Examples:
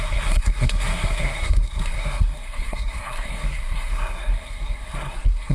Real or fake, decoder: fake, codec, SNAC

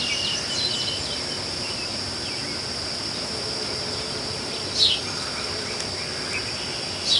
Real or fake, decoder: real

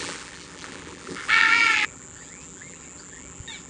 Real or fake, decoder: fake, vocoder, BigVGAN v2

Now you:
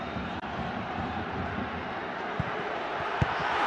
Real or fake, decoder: fake, vocoder, BigVGAN v2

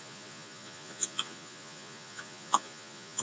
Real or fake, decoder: fake, vocoder, Vocos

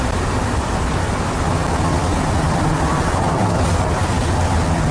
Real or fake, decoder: real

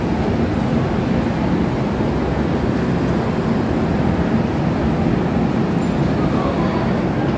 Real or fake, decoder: real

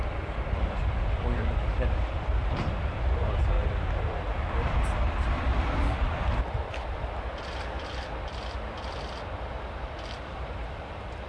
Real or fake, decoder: fake, vocoder, BigVGAN v2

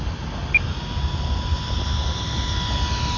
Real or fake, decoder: real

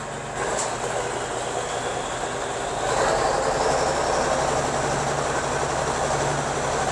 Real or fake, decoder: real